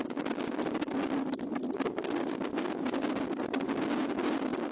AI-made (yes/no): no